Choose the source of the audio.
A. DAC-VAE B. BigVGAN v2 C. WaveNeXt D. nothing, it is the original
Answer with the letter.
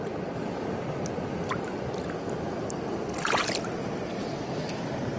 D